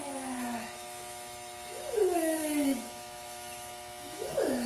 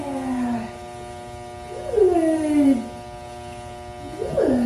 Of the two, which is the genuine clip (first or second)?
second